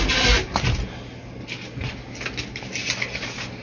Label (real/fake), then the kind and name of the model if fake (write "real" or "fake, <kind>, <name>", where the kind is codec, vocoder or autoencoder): real